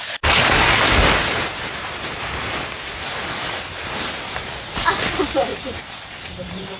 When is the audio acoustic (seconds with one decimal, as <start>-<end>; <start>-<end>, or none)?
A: 0.0-1.2; 4.9-5.5